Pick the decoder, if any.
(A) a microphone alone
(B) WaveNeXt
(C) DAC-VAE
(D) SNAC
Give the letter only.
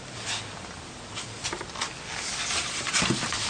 A